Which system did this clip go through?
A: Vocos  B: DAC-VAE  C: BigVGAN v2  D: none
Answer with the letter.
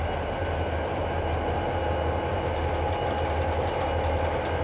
D